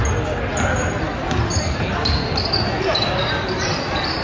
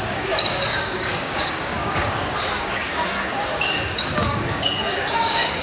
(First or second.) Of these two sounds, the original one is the first